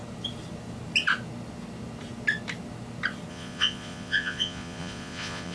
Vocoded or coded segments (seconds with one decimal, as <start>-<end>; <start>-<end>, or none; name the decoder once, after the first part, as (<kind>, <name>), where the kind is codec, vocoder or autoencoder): 3.3-5.5 (vocoder, Vocos)